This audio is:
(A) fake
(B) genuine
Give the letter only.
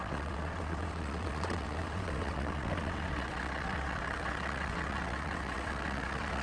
A